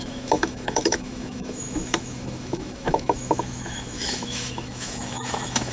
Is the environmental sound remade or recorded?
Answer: remade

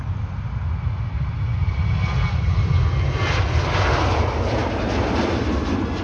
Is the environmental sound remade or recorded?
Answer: recorded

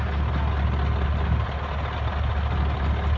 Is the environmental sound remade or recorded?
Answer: recorded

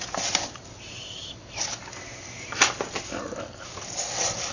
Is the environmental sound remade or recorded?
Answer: recorded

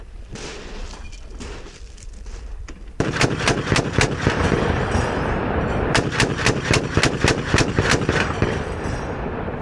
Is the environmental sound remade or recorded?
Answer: remade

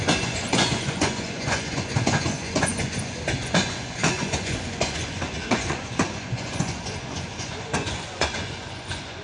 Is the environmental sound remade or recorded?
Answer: remade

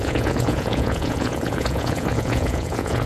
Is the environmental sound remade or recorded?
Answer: remade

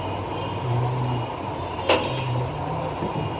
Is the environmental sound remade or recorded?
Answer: recorded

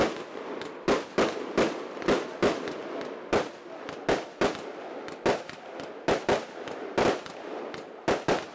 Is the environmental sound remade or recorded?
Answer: recorded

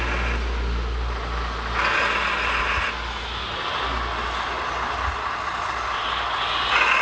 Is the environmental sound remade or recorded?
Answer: recorded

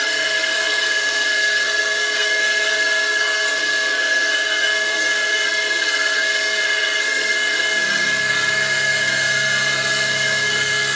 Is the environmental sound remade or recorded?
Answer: remade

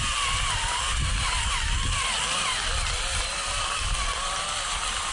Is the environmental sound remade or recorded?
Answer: recorded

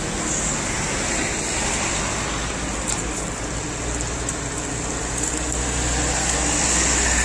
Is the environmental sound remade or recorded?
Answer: recorded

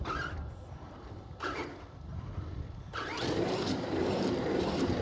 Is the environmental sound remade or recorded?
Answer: remade